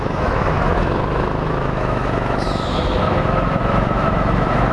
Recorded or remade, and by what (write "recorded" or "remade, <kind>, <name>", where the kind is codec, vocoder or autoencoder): remade, autoencoder, DAC-VAE